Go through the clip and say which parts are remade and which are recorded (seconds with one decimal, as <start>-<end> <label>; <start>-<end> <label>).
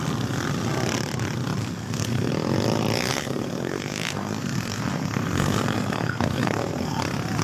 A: 0.0-1.6 recorded; 1.6-2.3 remade; 2.3-3.1 recorded; 3.1-7.0 remade; 7.0-7.4 recorded